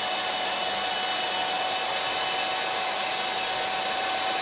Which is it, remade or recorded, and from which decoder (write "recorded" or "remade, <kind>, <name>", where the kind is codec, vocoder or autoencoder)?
recorded